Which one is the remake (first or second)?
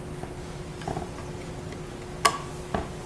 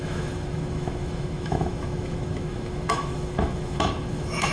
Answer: second